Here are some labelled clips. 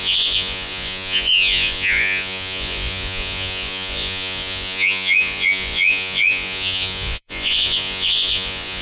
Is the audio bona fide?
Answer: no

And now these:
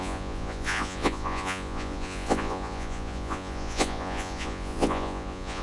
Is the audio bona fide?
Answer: no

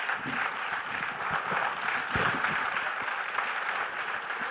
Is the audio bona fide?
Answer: yes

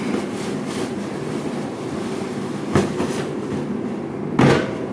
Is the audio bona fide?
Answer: yes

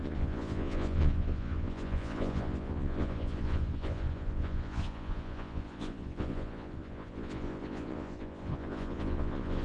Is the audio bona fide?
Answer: no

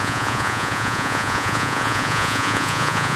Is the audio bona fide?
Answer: no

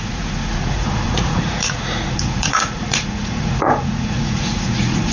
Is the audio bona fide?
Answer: no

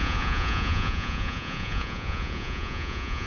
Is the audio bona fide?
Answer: no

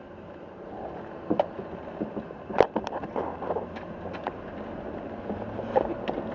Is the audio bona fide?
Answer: yes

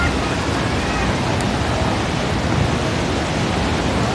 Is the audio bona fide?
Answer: yes